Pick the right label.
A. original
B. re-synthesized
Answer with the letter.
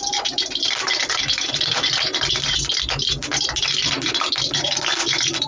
A